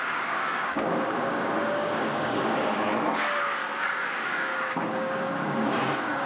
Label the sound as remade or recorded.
remade